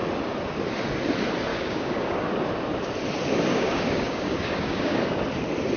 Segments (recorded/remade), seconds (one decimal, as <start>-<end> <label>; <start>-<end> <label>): 0.0-1.5 recorded; 1.5-2.3 remade; 2.3-3.5 recorded; 3.5-5.2 remade; 5.2-5.8 recorded